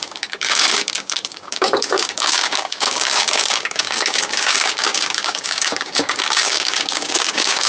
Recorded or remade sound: remade